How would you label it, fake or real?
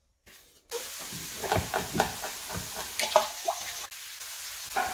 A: real